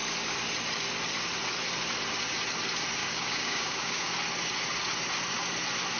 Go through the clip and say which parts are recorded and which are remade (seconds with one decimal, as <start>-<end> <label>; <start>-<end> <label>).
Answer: 0.0-3.0 recorded; 3.0-4.1 remade; 4.1-6.0 recorded